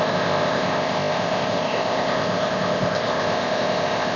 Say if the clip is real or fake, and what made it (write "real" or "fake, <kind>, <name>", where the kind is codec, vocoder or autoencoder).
fake, codec, ZipCodec